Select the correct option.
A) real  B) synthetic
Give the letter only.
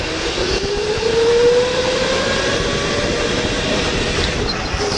A